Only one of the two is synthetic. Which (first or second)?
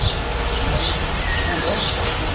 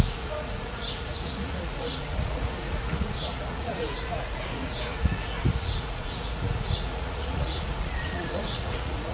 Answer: second